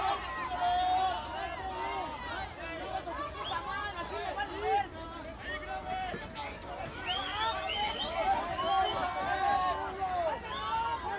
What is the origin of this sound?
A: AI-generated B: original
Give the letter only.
B